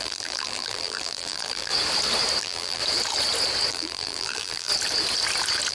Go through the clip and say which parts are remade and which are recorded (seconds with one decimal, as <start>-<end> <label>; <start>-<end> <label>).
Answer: 0.0-1.7 remade; 1.7-2.4 recorded; 2.4-2.8 remade; 2.8-3.7 recorded; 3.7-4.7 remade; 4.7-5.7 recorded